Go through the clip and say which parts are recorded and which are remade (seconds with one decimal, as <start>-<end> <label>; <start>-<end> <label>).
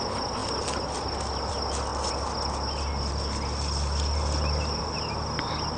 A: 0.0-5.8 recorded